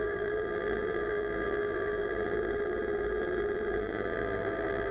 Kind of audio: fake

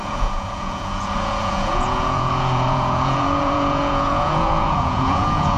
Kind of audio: fake